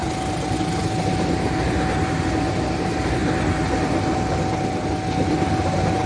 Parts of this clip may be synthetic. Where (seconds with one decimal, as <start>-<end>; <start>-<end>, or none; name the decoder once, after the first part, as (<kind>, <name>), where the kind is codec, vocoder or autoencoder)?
none